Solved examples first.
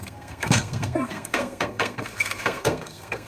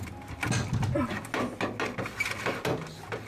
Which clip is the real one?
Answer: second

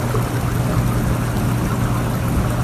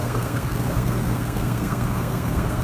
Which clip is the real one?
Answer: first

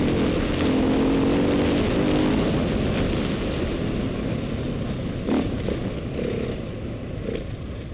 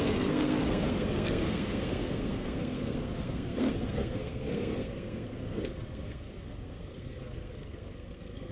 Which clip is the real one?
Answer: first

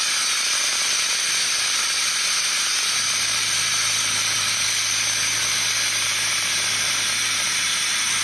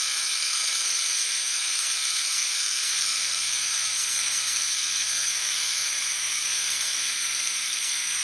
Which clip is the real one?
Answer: first